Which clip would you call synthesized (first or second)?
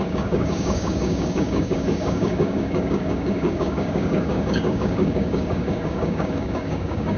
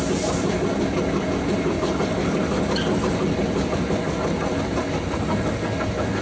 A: first